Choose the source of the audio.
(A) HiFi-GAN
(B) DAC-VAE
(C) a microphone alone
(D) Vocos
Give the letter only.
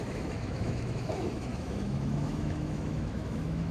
B